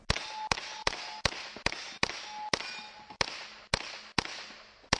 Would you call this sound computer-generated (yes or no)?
no